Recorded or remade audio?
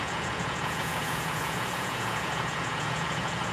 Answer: remade